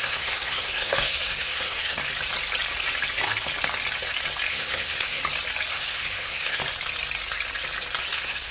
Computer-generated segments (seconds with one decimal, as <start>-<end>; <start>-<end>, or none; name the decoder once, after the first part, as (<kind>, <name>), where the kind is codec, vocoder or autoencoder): 0.0-2.0 (codec, SNAC); 4.5-5.2; 5.7-6.6; 8.1-8.5